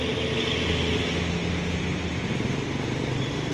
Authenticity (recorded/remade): recorded